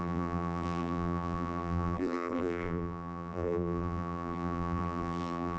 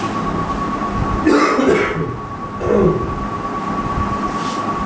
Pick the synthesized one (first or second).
first